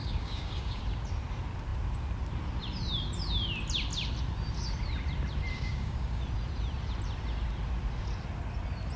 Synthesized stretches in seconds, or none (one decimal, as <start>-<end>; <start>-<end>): 0.0-0.8; 5.5-6.2

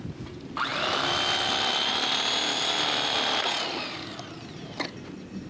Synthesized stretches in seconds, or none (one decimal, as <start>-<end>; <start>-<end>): none

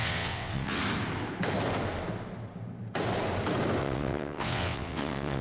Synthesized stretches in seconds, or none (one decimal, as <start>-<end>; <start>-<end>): 0.0-0.8; 3.8-5.4

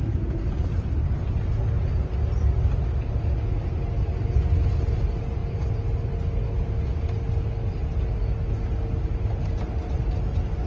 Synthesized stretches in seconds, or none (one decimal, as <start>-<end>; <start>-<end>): none

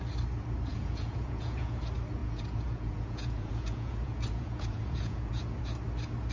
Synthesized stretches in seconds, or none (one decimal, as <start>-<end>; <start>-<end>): 0.7-1.8; 2.2-5.6

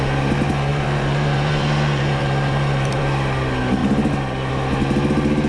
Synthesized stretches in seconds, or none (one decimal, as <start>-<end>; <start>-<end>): 0.7-3.0